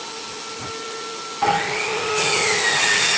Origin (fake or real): real